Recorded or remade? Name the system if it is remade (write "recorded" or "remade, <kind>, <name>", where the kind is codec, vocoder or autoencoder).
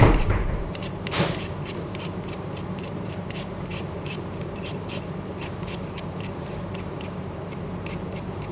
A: remade, vocoder, BigVGAN v2